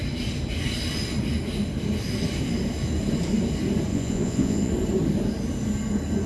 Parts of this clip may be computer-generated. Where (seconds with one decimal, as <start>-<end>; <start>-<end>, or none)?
3.9-4.7